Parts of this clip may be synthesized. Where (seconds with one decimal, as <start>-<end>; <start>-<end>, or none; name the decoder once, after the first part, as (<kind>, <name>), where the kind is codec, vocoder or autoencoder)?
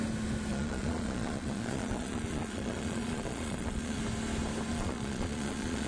0.5-4.0 (vocoder, Vocos); 4.7-5.9